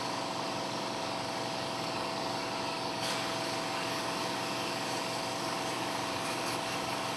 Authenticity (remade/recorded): remade